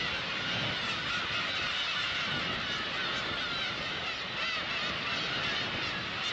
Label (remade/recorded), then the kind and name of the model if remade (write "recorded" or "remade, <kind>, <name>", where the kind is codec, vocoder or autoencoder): recorded